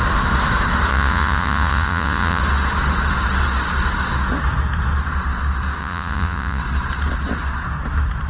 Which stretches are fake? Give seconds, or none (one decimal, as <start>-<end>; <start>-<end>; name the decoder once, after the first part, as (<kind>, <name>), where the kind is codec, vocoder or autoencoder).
0.9-2.4 (vocoder, Vocos); 5.8-6.6